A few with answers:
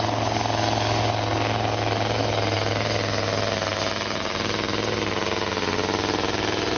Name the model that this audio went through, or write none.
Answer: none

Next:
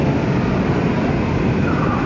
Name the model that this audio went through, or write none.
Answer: none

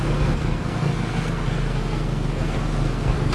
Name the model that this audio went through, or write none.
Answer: codec, SNAC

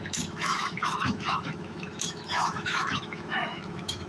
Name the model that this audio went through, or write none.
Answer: autoencoder, DAC-VAE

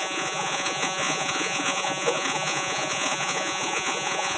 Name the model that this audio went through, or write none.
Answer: vocoder, Vocos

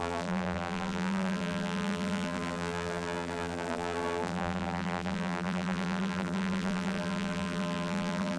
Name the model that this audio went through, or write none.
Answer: vocoder, BigVGAN v2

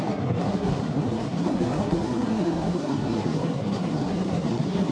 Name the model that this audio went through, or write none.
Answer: codec, SNAC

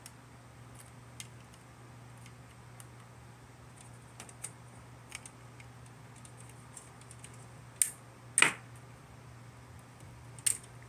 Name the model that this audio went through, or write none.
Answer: none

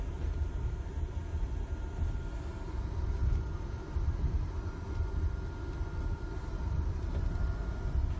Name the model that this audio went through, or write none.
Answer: none